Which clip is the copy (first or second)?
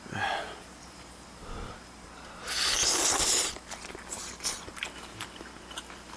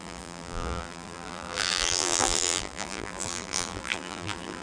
second